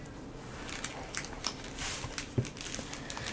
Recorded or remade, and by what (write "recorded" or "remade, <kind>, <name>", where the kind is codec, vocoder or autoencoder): recorded